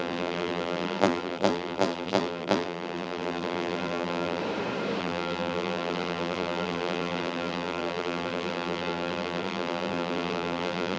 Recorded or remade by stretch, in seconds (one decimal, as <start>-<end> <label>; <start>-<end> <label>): 0.0-4.4 remade; 4.4-5.0 recorded; 5.0-11.0 remade